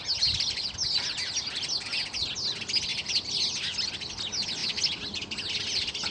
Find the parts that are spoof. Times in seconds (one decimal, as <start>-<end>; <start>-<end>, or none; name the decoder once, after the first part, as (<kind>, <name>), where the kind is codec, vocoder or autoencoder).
none